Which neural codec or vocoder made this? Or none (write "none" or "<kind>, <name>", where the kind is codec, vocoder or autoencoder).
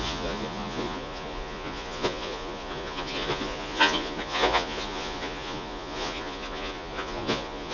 vocoder, Vocos